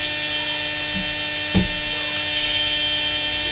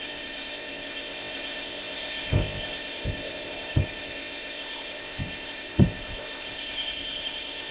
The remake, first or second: second